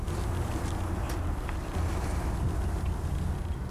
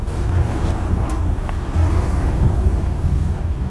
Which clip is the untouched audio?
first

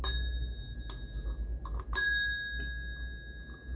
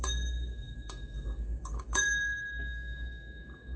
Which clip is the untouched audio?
first